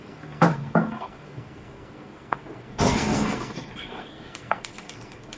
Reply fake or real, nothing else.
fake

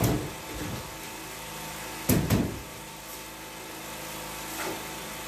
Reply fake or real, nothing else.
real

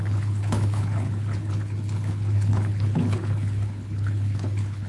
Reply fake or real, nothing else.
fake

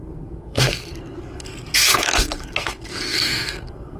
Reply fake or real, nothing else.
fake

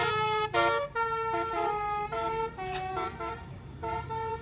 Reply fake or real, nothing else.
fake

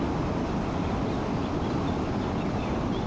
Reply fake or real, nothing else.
real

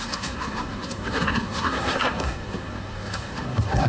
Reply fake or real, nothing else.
fake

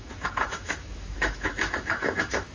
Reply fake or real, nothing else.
fake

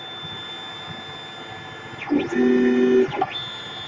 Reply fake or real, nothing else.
real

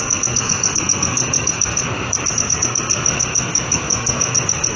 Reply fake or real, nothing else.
fake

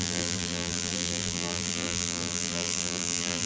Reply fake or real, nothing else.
fake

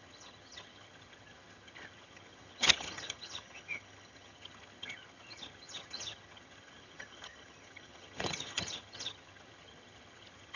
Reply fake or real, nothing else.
fake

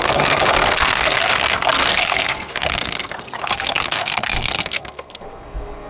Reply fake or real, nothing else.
fake